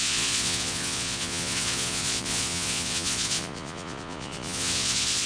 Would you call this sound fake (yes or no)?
yes